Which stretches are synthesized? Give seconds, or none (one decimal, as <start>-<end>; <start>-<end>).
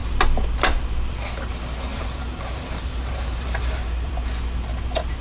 1.9-4.1